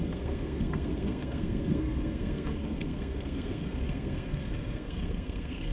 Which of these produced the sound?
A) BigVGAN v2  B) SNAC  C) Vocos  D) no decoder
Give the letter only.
B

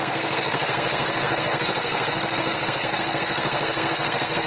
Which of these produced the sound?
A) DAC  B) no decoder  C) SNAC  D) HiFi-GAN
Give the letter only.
C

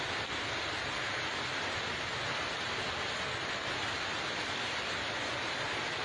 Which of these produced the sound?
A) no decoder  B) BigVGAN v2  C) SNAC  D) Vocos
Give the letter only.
A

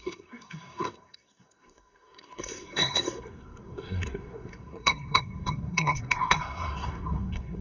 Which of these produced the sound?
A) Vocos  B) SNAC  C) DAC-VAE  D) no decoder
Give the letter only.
B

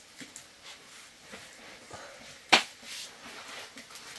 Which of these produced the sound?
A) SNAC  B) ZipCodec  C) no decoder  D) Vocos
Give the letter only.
C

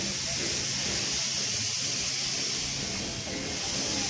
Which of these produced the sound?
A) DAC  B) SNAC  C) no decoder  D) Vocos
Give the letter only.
C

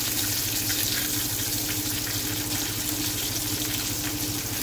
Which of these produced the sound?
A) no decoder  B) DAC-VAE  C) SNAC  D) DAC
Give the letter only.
A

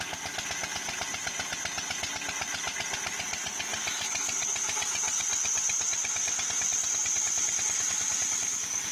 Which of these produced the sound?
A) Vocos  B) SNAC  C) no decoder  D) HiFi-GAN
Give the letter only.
C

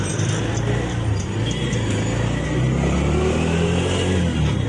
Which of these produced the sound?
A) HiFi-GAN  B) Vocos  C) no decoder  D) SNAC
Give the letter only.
C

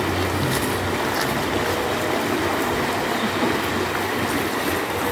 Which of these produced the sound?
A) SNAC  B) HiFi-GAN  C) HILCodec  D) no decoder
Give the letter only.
D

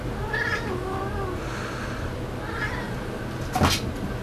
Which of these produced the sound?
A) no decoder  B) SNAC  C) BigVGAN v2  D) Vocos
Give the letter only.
A